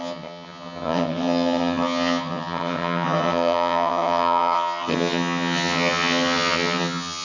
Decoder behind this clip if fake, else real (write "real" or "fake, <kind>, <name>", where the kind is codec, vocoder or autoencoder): fake, vocoder, HiFi-GAN